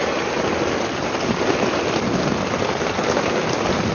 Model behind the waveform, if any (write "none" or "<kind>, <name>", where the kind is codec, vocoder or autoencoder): none